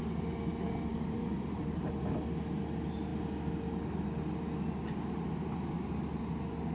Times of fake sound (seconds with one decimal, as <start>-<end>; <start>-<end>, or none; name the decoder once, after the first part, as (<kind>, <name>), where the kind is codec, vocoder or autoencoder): 0.9-1.9 (vocoder, BigVGAN v2)